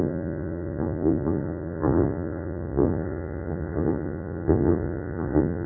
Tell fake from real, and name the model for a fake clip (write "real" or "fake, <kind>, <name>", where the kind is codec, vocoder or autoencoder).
fake, vocoder, Vocos